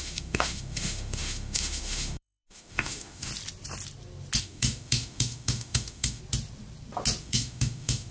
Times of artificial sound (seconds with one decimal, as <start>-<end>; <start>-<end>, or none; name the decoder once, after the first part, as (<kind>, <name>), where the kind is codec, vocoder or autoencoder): 0.0-3.3 (autoencoder, DAC-VAE); 4.4-6.2; 7.2-8.1